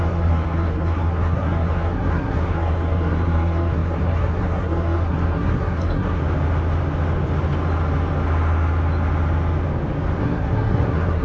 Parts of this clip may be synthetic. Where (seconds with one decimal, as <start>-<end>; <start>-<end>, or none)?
0.0-6.2; 10.2-11.2